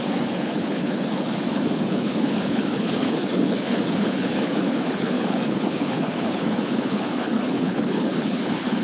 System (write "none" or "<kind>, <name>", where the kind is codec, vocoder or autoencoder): codec, HILCodec